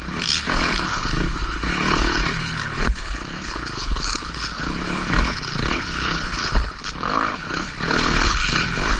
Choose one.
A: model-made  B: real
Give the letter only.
A